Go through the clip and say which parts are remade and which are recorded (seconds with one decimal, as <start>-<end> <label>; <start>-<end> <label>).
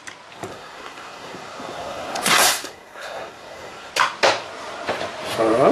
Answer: 0.0-0.5 recorded; 0.5-3.9 remade; 3.9-5.7 recorded